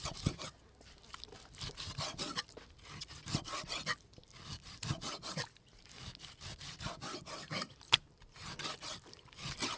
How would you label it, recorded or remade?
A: recorded